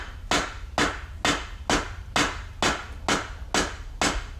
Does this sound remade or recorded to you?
recorded